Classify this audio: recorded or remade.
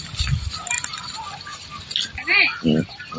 recorded